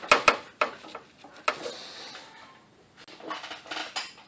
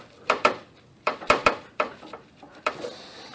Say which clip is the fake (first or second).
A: second